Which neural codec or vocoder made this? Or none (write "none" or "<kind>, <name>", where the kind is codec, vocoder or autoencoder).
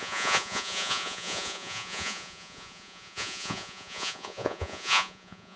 vocoder, Vocos